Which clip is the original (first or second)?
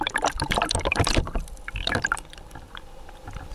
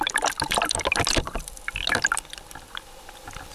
second